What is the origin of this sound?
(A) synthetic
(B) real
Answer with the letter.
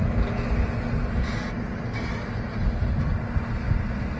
B